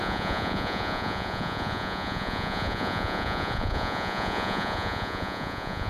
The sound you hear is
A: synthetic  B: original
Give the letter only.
A